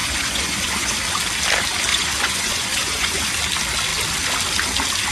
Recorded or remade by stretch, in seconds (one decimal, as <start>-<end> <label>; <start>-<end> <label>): 0.0-0.9 remade; 0.9-1.9 recorded; 1.9-3.3 remade; 3.3-5.1 recorded